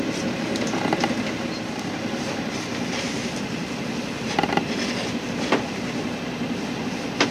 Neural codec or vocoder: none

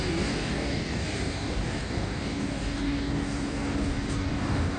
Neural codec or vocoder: codec, DAC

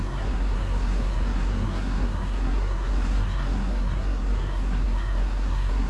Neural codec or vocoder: codec, SNAC